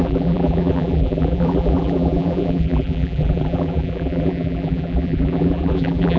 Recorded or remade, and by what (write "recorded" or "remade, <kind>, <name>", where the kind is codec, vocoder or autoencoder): remade, vocoder, BigVGAN v2